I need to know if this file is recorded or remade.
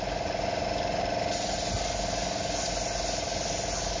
recorded